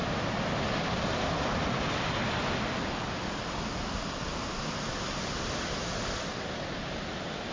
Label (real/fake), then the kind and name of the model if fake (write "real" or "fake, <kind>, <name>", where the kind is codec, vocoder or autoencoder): real